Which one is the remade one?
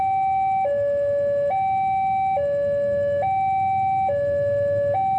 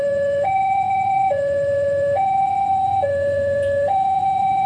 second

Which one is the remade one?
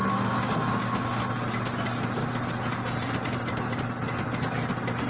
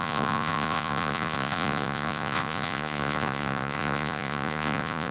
second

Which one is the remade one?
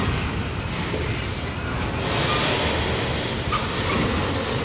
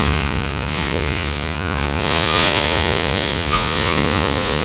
second